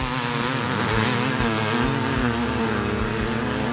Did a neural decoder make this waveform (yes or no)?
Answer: no